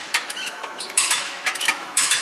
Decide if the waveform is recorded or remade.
remade